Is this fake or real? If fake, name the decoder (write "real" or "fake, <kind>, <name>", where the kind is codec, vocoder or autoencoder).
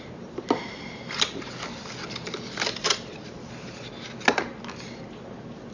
real